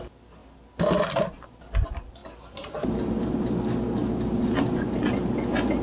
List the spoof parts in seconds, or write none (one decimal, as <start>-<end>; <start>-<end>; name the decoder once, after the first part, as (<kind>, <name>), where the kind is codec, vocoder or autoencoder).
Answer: 2.2-3.3 (vocoder, BigVGAN v2)